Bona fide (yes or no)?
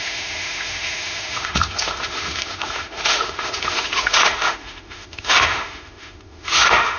no